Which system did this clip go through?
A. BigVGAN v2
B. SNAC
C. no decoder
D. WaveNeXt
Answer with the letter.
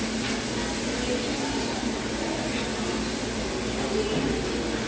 C